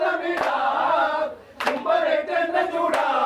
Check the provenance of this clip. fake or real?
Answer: fake